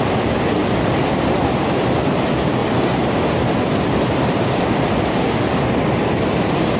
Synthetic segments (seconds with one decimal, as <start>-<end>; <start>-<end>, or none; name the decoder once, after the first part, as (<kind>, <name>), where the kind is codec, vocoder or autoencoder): none